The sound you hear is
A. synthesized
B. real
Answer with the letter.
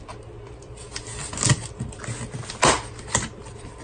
B